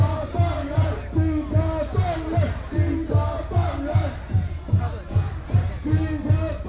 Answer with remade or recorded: recorded